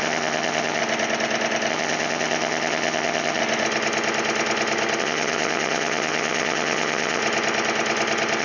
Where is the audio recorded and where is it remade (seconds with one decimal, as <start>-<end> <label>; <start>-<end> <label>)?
0.0-0.8 remade; 0.8-1.7 recorded; 1.7-3.4 remade; 3.4-5.0 recorded; 5.0-7.2 remade; 7.2-8.4 recorded